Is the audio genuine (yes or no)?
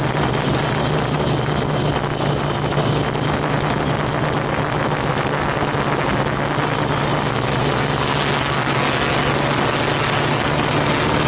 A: yes